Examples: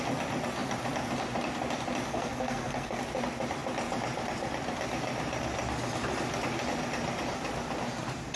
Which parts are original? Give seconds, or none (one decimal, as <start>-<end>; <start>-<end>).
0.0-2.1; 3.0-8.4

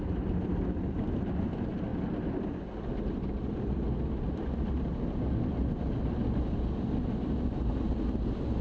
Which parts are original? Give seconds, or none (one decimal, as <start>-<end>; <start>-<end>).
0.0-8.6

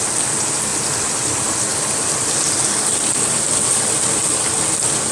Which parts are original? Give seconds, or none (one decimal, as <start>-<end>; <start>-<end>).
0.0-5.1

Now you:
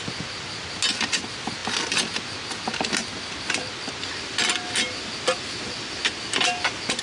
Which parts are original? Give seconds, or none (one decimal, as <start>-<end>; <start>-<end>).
0.0-7.0

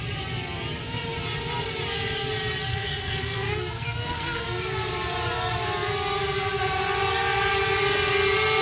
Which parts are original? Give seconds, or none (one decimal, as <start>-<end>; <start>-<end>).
0.0-2.7; 4.4-8.6

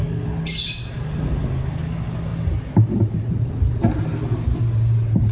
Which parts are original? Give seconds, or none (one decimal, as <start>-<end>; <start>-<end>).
0.0-5.3